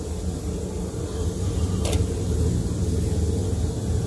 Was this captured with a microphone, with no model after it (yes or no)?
yes